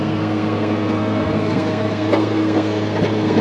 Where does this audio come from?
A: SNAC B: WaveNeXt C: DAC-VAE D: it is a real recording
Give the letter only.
A